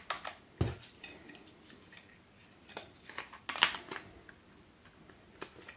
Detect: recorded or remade recorded